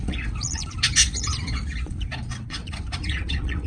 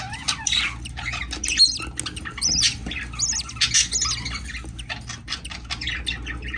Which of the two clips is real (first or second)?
second